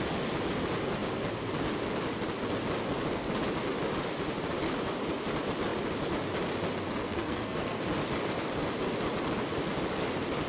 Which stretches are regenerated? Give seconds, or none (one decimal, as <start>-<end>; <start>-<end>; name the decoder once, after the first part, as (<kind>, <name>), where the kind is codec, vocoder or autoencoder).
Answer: 7.0-7.8 (codec, SNAC)